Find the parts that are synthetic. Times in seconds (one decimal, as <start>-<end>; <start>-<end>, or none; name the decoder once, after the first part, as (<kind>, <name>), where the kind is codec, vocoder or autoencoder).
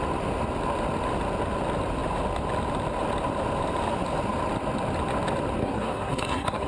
5.6-6.7 (codec, SNAC)